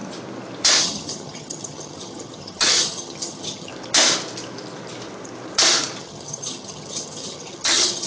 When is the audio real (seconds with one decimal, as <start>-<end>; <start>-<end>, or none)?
0.0-0.8; 3.7-6.0